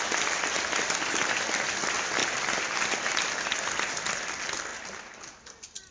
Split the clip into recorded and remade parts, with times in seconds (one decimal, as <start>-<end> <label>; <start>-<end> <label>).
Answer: 0.0-5.9 recorded